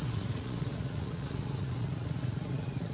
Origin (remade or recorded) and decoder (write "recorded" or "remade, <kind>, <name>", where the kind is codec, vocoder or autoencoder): remade, vocoder, Vocos